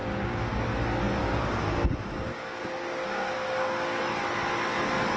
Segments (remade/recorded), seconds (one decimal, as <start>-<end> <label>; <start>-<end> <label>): 0.0-0.6 remade; 0.6-1.2 recorded; 1.2-4.0 remade; 4.0-5.2 recorded